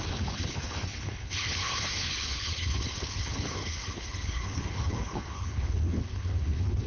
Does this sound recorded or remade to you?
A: remade